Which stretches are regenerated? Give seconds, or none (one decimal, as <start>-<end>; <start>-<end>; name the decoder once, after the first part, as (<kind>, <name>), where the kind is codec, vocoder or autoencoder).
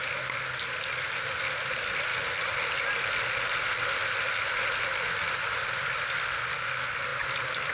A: none